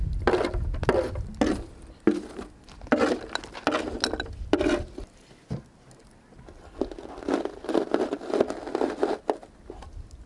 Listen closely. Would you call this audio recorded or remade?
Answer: recorded